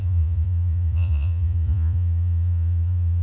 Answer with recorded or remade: remade